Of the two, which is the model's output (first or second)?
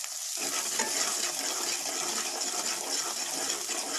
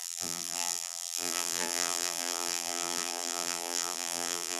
second